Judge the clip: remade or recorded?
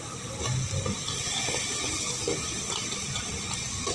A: recorded